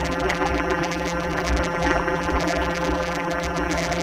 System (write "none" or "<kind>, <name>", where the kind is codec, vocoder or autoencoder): vocoder, BigVGAN v2